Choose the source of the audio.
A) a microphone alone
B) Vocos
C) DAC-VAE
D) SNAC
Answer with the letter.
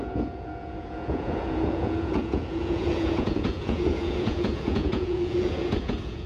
B